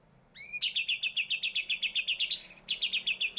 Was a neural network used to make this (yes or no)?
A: no